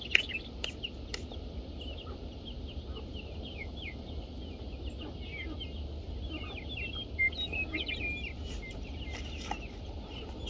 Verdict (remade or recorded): recorded